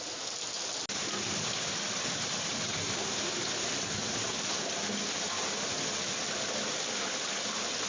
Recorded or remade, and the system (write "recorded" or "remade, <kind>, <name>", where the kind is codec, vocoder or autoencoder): recorded